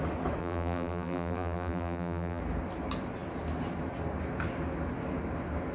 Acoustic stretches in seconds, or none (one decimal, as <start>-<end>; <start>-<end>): 0.0-0.4; 2.4-5.7